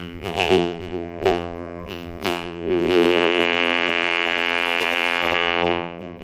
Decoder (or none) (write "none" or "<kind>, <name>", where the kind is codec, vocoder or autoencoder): vocoder, BigVGAN v2